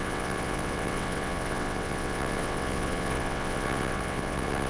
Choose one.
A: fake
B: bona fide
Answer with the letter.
A